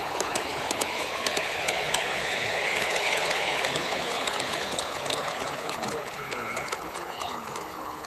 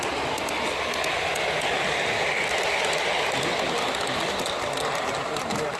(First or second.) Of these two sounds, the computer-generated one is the first